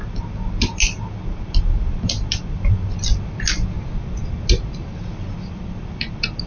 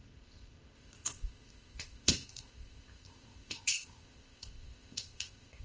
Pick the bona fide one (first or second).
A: first